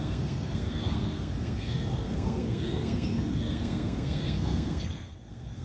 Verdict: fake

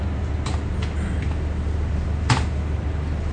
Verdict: real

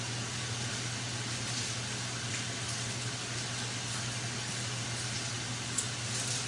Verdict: real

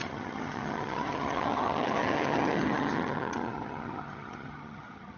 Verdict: fake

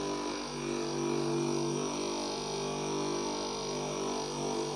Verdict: real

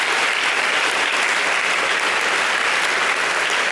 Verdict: real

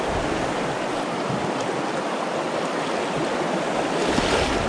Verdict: real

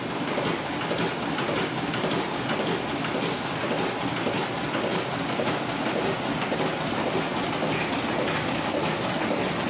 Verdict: real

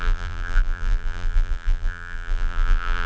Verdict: fake